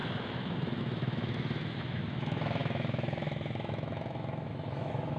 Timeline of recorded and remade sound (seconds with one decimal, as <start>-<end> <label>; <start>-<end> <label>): 0.0-5.2 remade